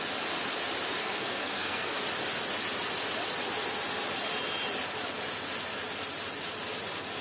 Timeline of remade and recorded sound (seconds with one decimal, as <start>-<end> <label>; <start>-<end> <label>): 0.0-1.0 recorded; 1.0-2.0 remade; 2.0-7.2 recorded